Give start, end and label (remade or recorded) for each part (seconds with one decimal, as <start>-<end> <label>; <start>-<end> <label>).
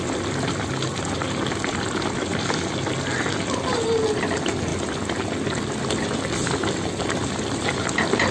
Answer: 0.0-8.3 recorded